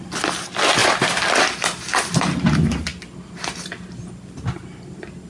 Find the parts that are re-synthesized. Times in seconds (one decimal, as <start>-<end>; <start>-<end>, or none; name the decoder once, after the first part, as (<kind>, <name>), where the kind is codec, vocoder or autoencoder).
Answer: none